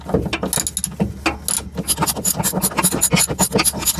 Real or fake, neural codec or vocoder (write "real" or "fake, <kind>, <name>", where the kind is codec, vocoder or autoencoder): real